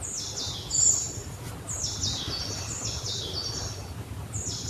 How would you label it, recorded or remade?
recorded